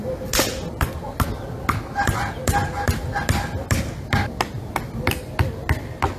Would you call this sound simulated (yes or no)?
no